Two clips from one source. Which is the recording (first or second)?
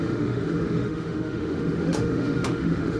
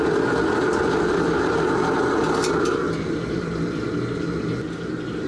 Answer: second